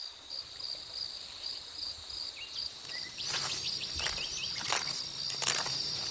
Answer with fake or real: real